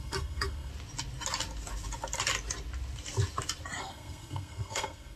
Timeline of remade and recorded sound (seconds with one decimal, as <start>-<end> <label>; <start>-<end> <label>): 0.0-0.7 remade; 0.7-3.8 recorded; 3.8-5.2 remade